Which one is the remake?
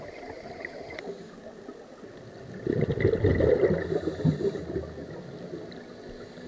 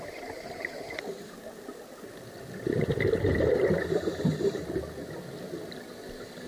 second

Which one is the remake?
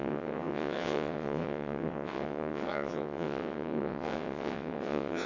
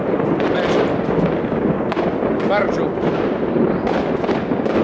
first